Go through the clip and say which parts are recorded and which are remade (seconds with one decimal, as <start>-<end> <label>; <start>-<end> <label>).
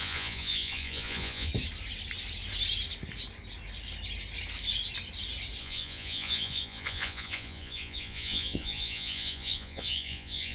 0.0-1.5 remade; 1.5-5.6 recorded; 5.6-10.5 remade